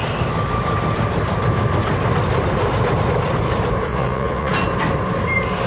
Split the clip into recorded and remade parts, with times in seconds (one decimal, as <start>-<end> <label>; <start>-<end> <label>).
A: 0.0-3.9 recorded; 3.9-4.5 remade; 4.5-5.7 recorded